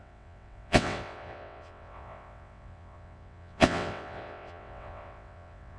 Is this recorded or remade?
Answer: remade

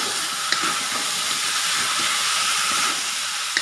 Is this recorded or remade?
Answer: recorded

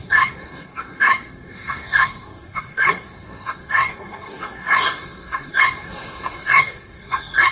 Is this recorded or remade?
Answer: remade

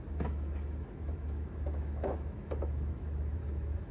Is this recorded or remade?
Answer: remade